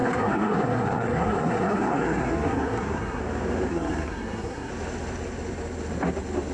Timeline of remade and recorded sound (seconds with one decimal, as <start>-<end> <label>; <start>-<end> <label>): 0.0-3.2 remade; 3.2-3.7 recorded; 3.7-4.7 remade; 4.7-6.5 recorded